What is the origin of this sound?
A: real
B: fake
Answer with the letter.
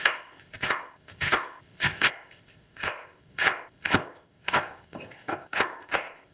B